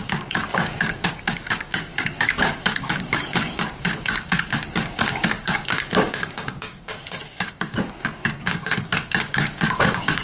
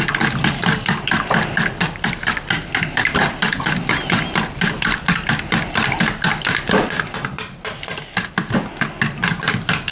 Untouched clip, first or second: second